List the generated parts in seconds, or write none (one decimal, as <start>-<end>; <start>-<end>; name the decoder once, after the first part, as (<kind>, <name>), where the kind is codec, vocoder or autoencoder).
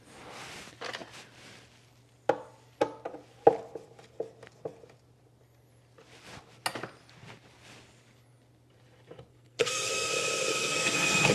9.3-10.1 (codec, SNAC); 10.5-11.3